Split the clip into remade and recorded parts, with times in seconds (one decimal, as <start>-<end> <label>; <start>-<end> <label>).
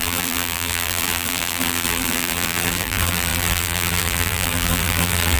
0.0-5.4 remade